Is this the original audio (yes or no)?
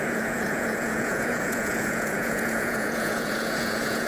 no